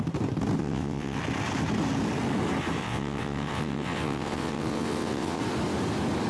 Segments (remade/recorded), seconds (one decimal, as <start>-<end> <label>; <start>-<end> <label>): 0.0-0.6 recorded; 0.6-1.2 remade; 1.2-2.8 recorded; 2.8-5.4 remade; 5.4-6.3 recorded